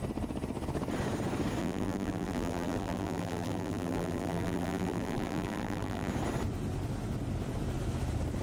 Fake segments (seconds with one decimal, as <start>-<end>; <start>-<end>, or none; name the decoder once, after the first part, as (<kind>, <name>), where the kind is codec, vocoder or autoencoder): 1.6-6.1 (vocoder, BigVGAN v2)